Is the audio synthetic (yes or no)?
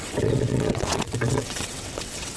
yes